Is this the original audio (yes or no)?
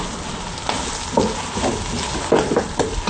yes